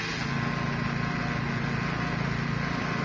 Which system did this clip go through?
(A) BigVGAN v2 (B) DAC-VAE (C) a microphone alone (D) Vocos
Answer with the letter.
C